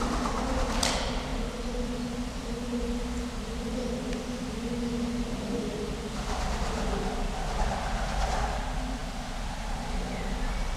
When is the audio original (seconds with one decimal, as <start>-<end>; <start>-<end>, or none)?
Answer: 0.0-9.0; 9.5-10.8